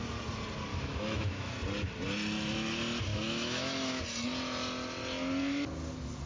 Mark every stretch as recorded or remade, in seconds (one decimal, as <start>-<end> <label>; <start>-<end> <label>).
0.0-0.7 recorded; 0.7-1.5 remade; 1.5-3.1 recorded; 3.1-4.0 remade; 4.0-6.3 recorded

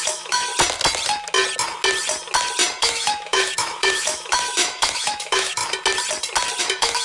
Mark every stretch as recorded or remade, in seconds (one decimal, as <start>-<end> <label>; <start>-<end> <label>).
0.0-0.5 remade; 0.5-2.8 recorded; 2.8-5.6 remade; 5.6-6.6 recorded; 6.6-7.0 remade

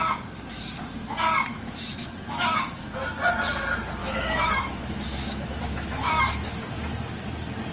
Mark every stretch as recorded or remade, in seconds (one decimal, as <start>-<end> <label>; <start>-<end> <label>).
0.0-1.5 recorded; 1.5-3.0 remade; 3.0-4.0 recorded; 4.0-6.2 remade; 6.2-7.7 recorded

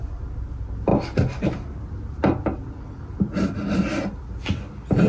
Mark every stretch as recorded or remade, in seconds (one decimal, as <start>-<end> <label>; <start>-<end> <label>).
0.0-5.1 recorded